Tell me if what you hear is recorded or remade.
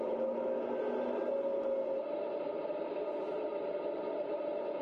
recorded